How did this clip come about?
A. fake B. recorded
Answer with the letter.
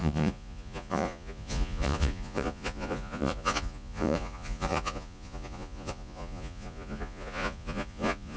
A